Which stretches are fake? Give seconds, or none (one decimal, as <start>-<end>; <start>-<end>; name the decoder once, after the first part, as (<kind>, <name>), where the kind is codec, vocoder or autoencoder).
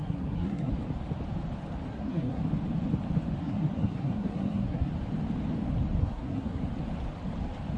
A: 0.0-0.7 (codec, SNAC); 1.9-2.4; 3.4-4.9; 6.0-6.6